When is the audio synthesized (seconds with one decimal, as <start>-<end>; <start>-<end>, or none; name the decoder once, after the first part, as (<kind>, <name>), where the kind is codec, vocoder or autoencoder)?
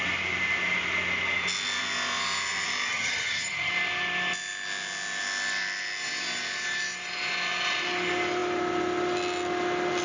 2.9-3.7 (vocoder, HiFi-GAN)